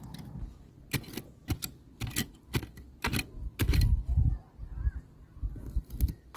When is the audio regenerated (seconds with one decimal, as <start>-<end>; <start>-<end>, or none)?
none